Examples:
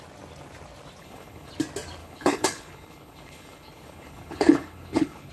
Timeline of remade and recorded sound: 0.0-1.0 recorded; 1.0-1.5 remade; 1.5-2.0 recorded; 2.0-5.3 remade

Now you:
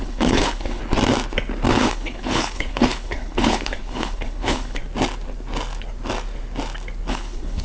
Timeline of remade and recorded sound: 0.0-0.8 remade; 0.8-1.7 recorded; 1.7-4.8 remade; 4.8-7.1 recorded; 7.1-7.6 remade

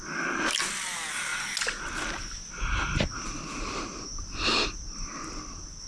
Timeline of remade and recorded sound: 0.0-5.9 recorded

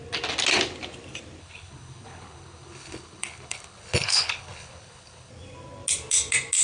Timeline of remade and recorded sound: 0.0-1.4 recorded; 1.4-5.3 remade; 5.3-6.6 recorded

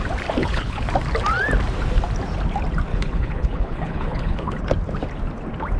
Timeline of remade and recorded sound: 0.0-0.4 recorded; 0.4-0.9 remade; 0.9-2.9 recorded; 2.9-4.6 remade; 4.6-5.8 recorded

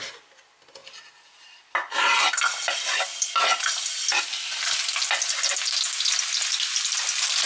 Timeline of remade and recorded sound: 0.0-7.5 recorded

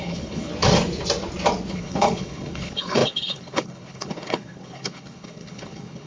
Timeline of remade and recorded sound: 0.0-0.5 remade; 0.5-1.7 recorded; 1.7-6.1 remade

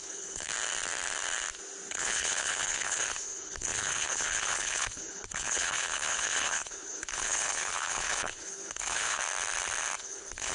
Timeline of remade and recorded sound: 0.0-0.5 remade; 0.5-1.9 recorded; 1.9-9.2 remade; 9.2-10.0 recorded; 10.0-10.5 remade